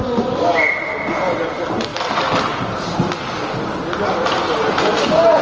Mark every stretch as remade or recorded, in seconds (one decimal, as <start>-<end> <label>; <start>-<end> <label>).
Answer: 0.0-5.4 recorded